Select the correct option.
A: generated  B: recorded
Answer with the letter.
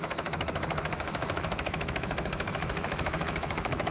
A